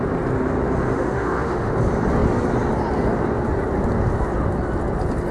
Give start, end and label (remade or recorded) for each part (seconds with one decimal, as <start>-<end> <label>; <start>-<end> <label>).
0.0-0.9 recorded; 0.9-1.7 remade; 1.7-5.3 recorded